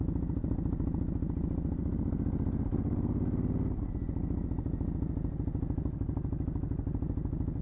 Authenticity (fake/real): real